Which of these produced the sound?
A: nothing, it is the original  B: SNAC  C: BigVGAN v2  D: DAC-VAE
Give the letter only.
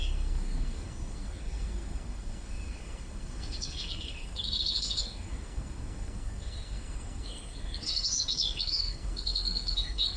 B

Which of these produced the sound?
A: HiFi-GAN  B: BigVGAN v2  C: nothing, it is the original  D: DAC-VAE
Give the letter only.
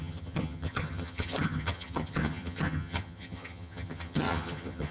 A